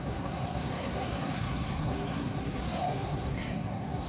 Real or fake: fake